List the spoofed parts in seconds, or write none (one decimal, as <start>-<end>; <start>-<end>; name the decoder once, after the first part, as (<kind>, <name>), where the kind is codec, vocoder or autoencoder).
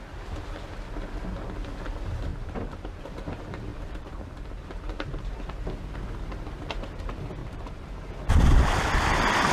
2.3-3.0 (vocoder, BigVGAN v2); 3.7-5.4; 7.4-8.1